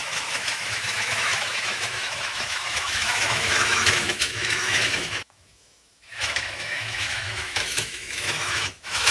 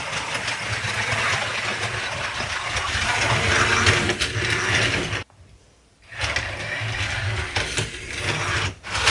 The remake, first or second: first